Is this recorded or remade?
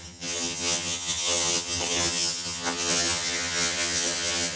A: remade